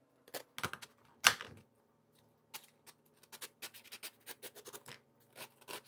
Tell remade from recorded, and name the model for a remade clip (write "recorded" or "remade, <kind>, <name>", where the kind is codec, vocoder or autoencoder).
recorded